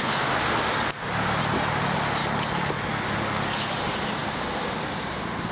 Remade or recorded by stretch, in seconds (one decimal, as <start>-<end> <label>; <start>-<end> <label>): 0.0-2.2 recorded; 2.2-3.8 remade; 3.8-5.5 recorded